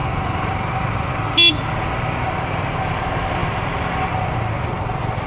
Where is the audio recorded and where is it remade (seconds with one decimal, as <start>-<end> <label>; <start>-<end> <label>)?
0.0-5.3 recorded